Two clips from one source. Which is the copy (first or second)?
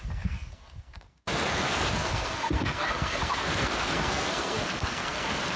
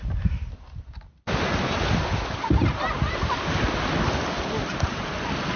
first